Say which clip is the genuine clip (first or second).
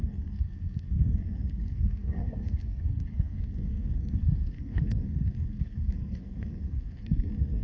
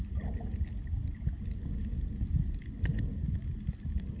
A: second